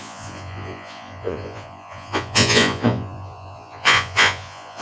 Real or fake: fake